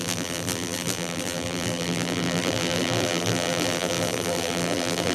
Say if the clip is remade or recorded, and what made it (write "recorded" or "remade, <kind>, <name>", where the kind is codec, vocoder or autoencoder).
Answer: remade, vocoder, BigVGAN v2